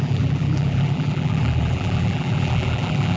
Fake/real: fake